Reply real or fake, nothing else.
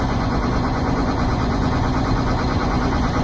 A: fake